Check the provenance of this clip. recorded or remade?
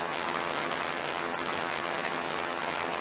remade